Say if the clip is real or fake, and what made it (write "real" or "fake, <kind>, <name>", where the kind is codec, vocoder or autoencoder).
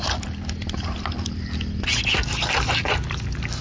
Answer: real